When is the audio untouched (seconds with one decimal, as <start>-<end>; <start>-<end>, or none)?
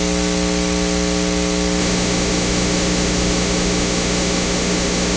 0.0-1.8